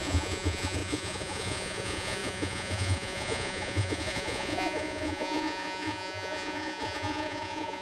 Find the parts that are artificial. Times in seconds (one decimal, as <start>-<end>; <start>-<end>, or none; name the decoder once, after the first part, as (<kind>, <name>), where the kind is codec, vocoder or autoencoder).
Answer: 0.0-7.8 (vocoder, Vocos)